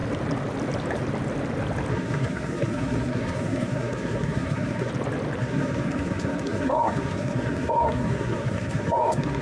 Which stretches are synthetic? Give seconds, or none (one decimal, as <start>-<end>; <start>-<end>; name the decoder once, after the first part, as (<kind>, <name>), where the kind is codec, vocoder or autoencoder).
1.9-4.9 (codec, SNAC); 5.4-9.4